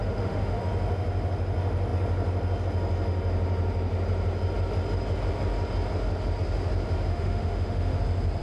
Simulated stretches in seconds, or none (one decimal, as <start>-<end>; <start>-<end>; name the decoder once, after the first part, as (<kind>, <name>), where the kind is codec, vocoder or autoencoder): 0.0-0.6 (autoencoder, DAC-VAE); 7.1-8.0